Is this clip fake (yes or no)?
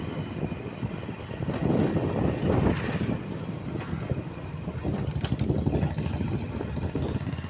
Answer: no